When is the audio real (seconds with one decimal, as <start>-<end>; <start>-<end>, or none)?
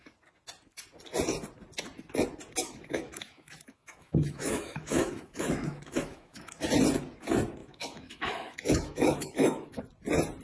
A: 0.0-2.6; 6.6-7.6; 9.8-10.4